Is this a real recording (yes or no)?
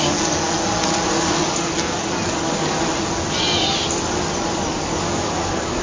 yes